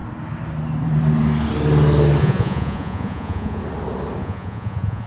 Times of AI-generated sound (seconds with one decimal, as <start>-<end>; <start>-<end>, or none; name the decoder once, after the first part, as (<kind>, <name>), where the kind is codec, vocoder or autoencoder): 2.2-3.6 (vocoder, Vocos); 4.2-5.1